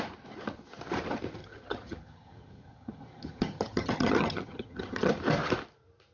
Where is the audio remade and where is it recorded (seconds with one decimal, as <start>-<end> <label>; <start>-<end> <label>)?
0.0-1.4 recorded; 1.4-5.1 remade; 5.1-6.1 recorded